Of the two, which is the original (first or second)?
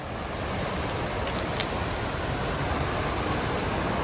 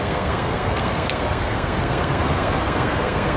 first